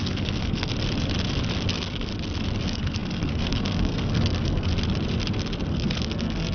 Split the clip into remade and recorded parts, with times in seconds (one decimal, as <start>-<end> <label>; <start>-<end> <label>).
0.0-0.7 remade; 0.7-1.7 recorded; 1.7-2.1 remade; 2.1-2.6 recorded; 2.6-4.7 remade; 4.7-5.7 recorded; 5.7-6.5 remade